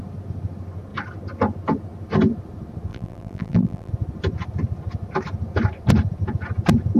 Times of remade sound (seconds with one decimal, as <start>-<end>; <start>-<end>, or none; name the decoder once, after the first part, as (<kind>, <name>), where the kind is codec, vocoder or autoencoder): 2.9-3.9 (vocoder, BigVGAN v2)